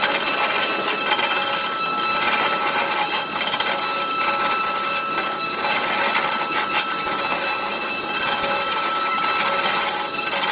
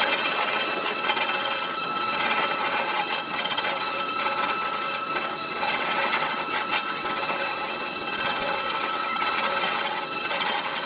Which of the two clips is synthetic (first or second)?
second